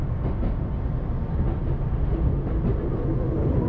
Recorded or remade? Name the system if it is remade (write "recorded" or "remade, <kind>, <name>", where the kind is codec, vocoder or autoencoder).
recorded